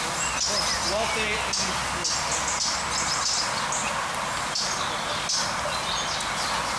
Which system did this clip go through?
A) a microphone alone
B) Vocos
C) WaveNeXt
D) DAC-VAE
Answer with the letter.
A